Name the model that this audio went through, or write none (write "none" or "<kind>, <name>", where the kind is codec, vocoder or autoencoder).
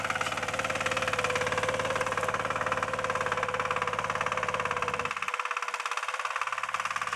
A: none